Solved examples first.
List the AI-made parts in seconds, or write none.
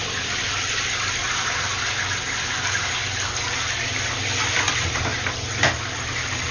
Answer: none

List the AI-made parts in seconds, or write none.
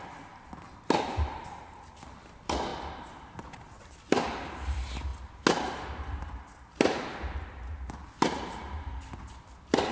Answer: none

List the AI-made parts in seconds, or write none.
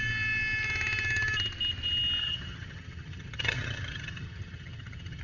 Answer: 2.2-5.2 (vocoder, HiFi-GAN)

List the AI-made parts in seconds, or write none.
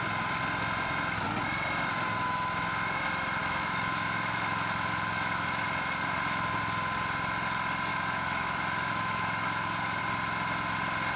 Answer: 3.4-6.2 (autoencoder, DAC-VAE); 7.9-10.0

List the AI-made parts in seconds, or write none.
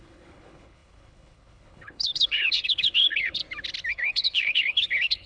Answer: 0.0-3.4 (codec, HILCodec); 3.9-5.3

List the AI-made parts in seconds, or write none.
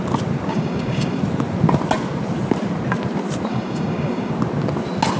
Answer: 0.5-1.2 (codec, DAC); 3.5-4.3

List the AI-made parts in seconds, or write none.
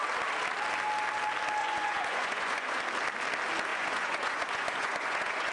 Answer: 1.6-2.8 (vocoder, Vocos); 3.7-5.5